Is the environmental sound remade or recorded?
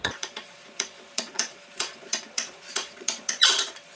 remade